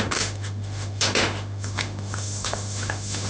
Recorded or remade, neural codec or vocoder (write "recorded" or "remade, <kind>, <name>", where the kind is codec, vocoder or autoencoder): remade, autoencoder, DAC-VAE